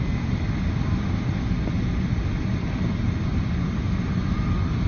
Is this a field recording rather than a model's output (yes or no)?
yes